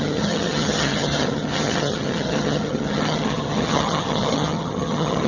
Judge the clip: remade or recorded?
remade